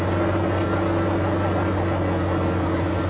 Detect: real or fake real